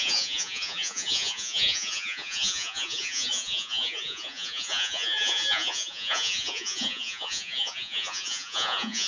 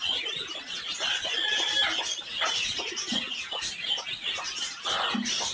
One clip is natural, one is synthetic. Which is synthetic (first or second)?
first